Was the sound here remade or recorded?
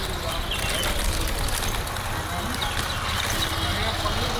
recorded